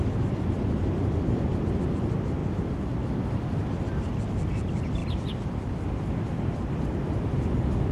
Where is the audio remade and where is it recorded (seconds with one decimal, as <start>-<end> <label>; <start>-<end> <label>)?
0.0-7.9 recorded